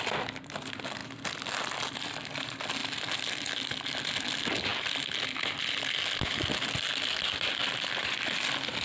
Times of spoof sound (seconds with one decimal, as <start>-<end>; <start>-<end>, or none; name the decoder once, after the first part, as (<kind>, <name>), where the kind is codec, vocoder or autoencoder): none